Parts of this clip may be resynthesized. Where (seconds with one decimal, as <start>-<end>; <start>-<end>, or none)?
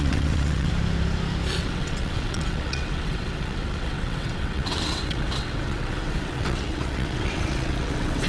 0.0-0.7; 1.6-8.3